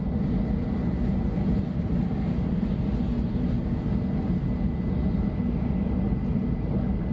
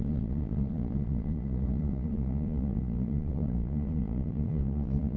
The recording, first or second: first